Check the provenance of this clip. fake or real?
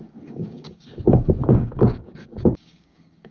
fake